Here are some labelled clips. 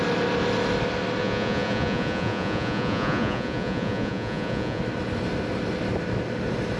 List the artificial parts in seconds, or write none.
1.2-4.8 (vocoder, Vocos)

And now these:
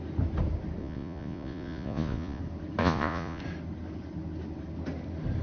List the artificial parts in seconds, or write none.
0.8-2.4 (vocoder, Vocos); 2.8-3.4